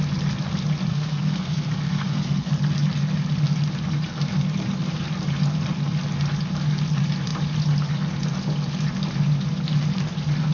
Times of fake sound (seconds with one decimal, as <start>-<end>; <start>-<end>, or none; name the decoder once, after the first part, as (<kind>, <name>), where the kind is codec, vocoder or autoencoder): 0.9-2.5 (codec, SNAC)